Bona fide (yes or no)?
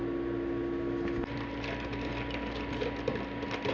yes